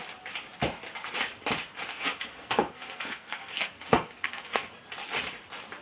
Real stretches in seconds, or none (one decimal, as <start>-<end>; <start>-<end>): 0.0-1.9; 4.7-5.8